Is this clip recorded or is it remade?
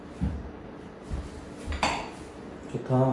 recorded